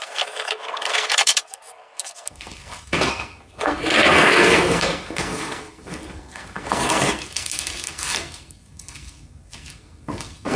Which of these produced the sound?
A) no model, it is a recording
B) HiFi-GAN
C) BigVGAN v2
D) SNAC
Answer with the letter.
D